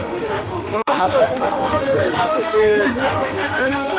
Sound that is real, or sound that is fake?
fake